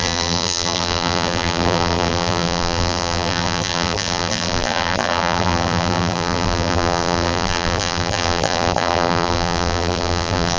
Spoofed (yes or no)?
yes